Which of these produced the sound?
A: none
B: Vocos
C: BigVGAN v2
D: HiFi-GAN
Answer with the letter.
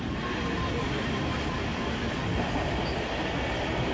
A